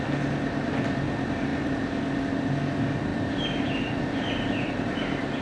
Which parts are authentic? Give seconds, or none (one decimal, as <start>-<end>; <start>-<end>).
0.0-3.1; 4.7-5.4